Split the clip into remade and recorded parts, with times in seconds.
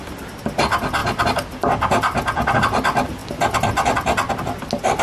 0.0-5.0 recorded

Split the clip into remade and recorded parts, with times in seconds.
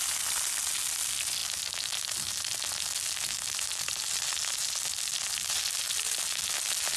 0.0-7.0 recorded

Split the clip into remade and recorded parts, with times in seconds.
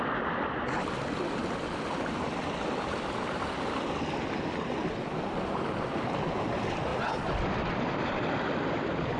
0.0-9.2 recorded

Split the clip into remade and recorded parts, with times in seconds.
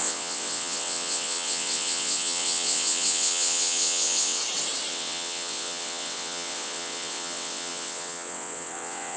0.0-4.4 remade; 4.4-4.9 recorded; 4.9-9.2 remade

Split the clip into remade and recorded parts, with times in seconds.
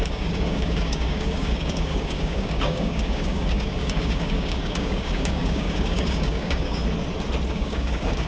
0.0-6.8 remade; 6.8-7.5 recorded; 7.5-8.3 remade